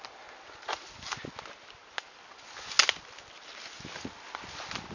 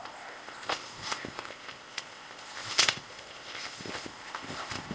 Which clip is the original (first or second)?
first